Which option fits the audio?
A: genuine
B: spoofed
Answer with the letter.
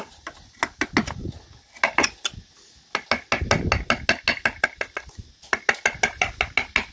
A